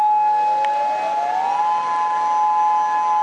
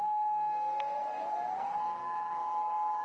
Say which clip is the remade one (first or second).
second